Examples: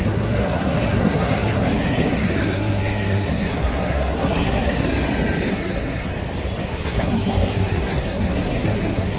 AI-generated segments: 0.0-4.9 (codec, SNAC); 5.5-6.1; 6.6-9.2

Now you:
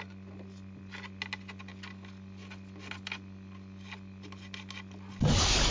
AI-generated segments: none

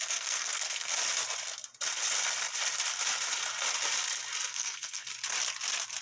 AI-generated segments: 0.0-0.9 (codec, SNAC); 4.5-5.1

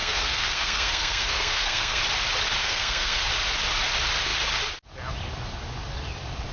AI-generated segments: 0.0-2.0 (codec, SNAC); 2.6-3.3

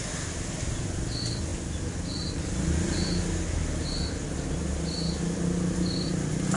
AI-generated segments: none